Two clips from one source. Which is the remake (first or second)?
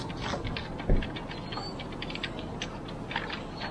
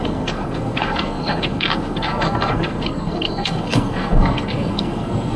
second